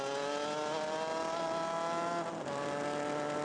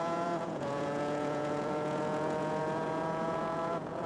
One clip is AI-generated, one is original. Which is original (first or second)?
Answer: first